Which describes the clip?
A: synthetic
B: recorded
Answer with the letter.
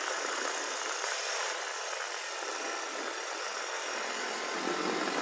A